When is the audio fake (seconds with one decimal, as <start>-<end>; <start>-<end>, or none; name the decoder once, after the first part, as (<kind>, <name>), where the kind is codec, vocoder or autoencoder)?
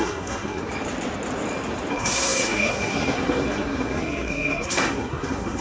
0.0-0.7 (codec, SNAC); 1.9-5.6